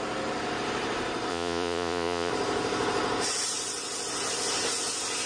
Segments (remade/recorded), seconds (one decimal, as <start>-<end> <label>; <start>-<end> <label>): 0.0-1.3 recorded; 1.3-2.3 remade; 2.3-5.3 recorded